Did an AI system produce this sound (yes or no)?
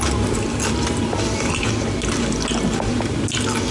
no